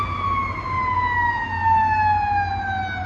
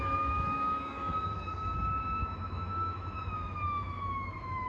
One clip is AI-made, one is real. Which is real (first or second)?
first